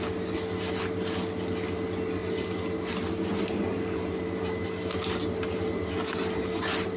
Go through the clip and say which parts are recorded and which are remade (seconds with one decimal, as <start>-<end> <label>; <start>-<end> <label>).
0.0-7.0 recorded